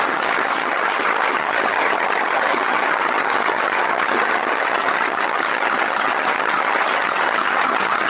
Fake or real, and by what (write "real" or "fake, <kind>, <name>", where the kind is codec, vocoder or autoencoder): fake, vocoder, HiFi-GAN